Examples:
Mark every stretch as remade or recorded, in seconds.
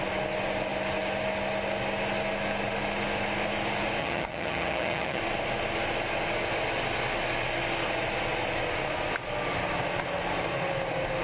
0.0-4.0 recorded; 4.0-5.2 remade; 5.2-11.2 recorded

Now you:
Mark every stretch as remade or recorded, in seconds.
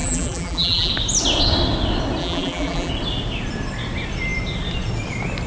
0.0-0.9 remade; 0.9-2.2 recorded; 2.2-2.9 remade; 2.9-5.5 recorded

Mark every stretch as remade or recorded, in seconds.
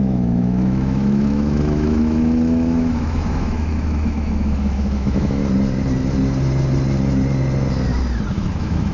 0.0-5.4 remade; 5.4-8.3 recorded; 8.3-8.9 remade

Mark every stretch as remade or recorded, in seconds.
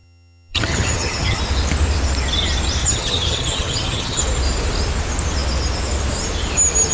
0.0-1.4 remade; 1.4-2.8 recorded; 2.8-4.2 remade; 4.2-6.9 recorded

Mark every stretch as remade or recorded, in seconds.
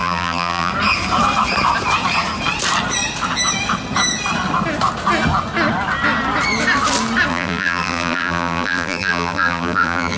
0.0-0.7 remade; 0.7-7.3 recorded; 7.3-10.2 remade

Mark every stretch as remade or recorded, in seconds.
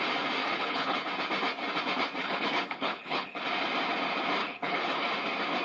0.0-0.4 recorded; 0.4-1.1 remade; 1.1-2.2 recorded; 2.2-3.4 remade; 3.4-4.4 recorded; 4.4-5.1 remade; 5.1-5.6 recorded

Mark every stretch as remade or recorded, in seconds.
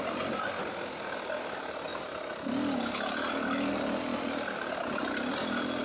0.0-5.8 recorded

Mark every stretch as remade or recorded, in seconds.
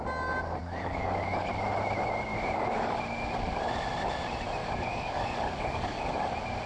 0.0-0.6 recorded; 0.6-1.5 remade; 1.5-2.3 recorded; 2.3-3.0 remade; 3.0-4.6 recorded; 4.6-6.1 remade; 6.1-6.7 recorded